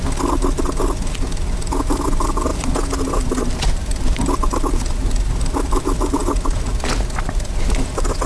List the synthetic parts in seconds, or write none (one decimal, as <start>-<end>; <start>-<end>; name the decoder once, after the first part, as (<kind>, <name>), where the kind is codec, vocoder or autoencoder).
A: none